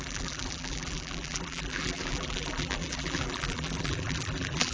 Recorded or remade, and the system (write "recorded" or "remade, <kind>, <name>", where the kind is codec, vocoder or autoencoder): remade, vocoder, BigVGAN v2